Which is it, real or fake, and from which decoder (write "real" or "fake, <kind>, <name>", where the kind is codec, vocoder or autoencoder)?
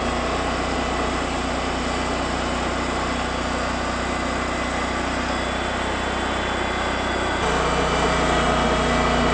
real